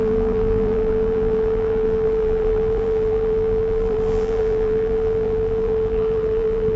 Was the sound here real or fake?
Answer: fake